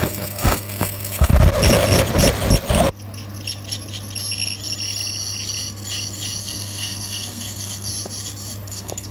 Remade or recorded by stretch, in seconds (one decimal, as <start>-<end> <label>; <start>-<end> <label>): 0.0-1.3 remade; 1.3-6.4 recorded; 6.4-7.9 remade; 7.9-8.7 recorded; 8.7-9.1 remade